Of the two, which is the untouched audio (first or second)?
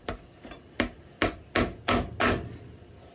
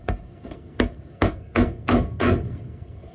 first